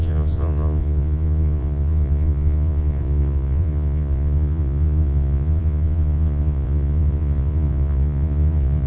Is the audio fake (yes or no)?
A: yes